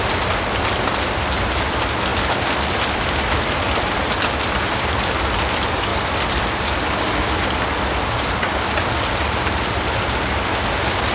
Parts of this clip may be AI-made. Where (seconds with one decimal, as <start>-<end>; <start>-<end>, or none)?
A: 2.1-5.3; 5.9-6.4